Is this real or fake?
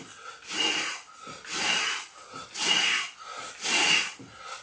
real